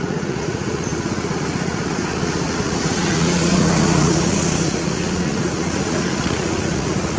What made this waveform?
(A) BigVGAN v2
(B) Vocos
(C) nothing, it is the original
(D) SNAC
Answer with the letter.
B